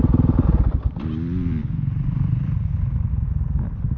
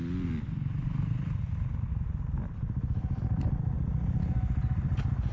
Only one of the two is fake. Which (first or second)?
second